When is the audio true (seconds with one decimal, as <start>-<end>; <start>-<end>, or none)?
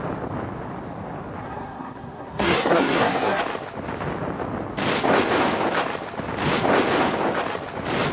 0.0-1.4; 3.4-8.1